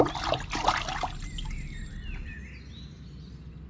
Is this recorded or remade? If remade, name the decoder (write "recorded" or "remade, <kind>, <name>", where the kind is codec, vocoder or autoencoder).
recorded